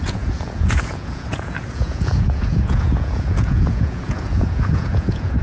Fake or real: fake